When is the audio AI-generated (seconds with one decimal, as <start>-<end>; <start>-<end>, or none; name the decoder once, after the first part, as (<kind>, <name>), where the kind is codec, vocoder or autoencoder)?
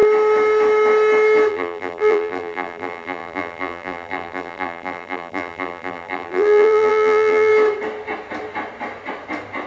1.5-7.5 (vocoder, BigVGAN v2)